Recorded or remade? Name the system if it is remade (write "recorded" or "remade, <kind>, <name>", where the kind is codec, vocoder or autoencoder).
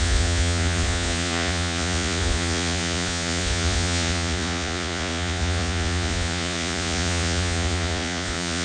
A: remade, vocoder, Vocos